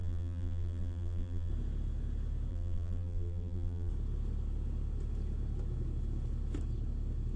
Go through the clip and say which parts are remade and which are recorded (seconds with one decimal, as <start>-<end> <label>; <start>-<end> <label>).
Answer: 0.0-1.5 remade; 1.5-2.5 recorded; 2.5-3.9 remade; 3.9-7.4 recorded